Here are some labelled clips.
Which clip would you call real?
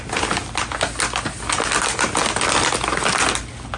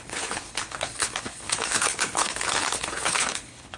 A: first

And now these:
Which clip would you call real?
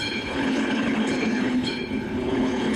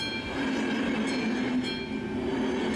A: second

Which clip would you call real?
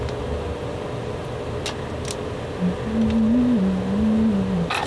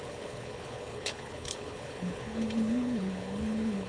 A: first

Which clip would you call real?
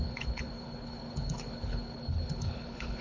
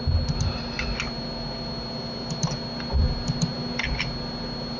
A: second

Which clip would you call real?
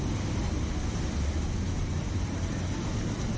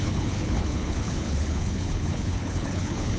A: first